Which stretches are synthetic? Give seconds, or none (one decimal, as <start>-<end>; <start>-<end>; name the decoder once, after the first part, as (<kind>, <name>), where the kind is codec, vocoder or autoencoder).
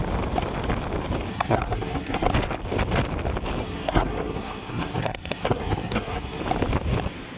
1.3-2.3 (codec, SNAC); 3.6-6.4